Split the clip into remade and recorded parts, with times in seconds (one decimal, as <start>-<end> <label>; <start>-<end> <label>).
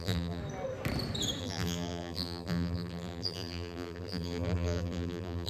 0.0-0.4 remade; 0.4-1.4 recorded; 1.4-5.5 remade